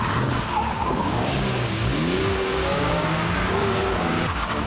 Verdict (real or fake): fake